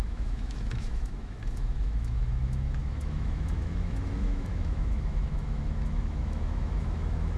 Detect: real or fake fake